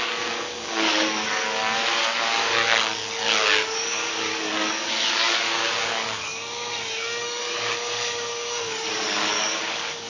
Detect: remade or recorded remade